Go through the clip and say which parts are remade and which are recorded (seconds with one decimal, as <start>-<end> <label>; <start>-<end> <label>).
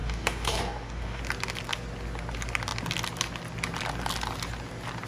0.0-1.2 remade; 1.2-5.1 recorded